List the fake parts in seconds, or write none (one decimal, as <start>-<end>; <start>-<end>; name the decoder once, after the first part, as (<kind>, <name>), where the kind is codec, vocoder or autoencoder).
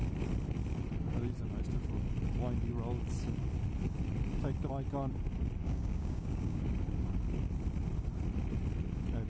5.6-6.6 (codec, DAC)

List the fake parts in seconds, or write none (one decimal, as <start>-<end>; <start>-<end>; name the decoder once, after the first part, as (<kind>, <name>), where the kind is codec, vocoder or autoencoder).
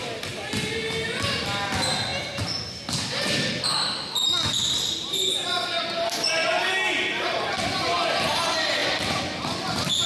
none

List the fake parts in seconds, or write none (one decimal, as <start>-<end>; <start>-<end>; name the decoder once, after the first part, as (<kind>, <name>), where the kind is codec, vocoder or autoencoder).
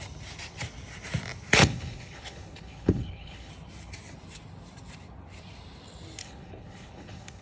1.6-3.5 (codec, HILCodec); 6.2-7.4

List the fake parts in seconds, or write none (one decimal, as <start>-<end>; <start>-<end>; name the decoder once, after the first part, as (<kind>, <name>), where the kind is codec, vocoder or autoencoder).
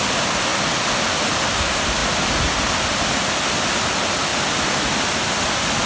none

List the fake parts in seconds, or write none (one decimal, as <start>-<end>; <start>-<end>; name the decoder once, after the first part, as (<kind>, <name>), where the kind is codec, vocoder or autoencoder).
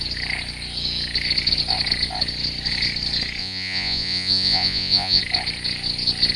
3.4-5.2 (vocoder, Vocos)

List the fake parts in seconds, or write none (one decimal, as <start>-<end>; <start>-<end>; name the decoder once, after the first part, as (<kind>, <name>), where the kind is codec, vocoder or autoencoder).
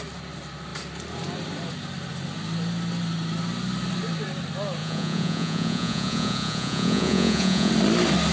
4.8-7.7 (vocoder, Vocos)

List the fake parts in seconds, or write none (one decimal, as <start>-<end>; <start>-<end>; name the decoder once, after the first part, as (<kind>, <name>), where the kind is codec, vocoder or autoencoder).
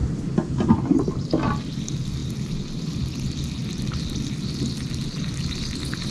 none